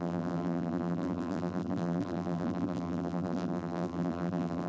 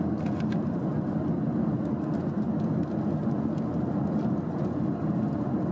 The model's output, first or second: first